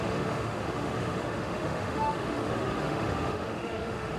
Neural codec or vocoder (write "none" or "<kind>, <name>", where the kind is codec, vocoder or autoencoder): autoencoder, DAC-VAE